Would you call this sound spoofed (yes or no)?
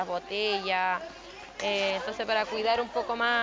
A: no